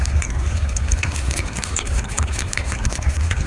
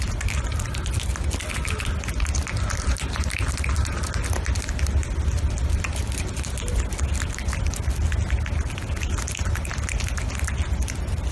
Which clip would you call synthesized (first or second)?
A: first